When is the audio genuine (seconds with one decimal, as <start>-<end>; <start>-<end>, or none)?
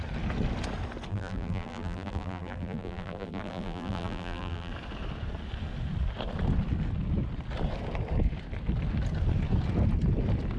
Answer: 0.0-1.1; 4.7-10.6